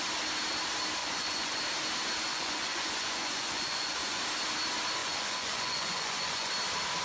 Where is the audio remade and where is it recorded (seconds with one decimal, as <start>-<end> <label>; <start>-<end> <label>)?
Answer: 0.0-1.0 recorded; 1.0-1.6 remade; 1.6-2.3 recorded; 2.3-4.2 remade; 4.2-5.0 recorded; 5.0-6.5 remade; 6.5-7.0 recorded